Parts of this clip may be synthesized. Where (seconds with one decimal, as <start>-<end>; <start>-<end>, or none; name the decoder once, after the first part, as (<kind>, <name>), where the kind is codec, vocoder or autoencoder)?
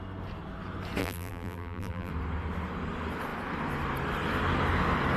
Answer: 1.0-2.1 (vocoder, BigVGAN v2)